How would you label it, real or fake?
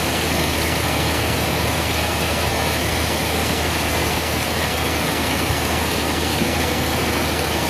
fake